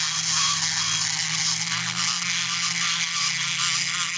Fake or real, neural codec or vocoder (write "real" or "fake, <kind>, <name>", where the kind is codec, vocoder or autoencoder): real